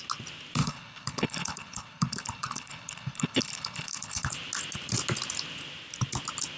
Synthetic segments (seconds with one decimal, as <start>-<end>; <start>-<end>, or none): 0.6-4.3